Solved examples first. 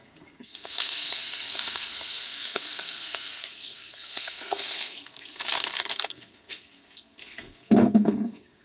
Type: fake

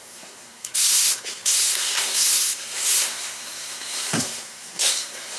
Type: fake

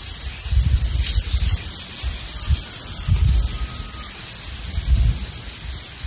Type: real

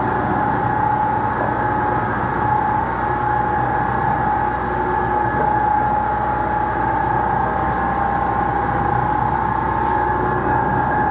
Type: real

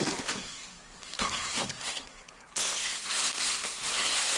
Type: fake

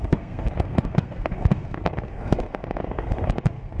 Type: fake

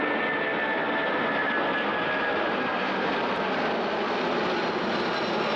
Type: real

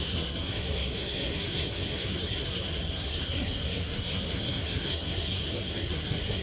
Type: fake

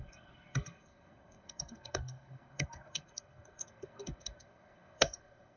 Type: fake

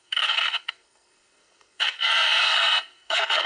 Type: fake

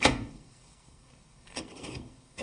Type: fake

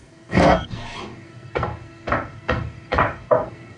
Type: fake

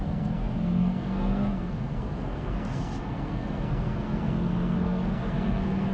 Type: fake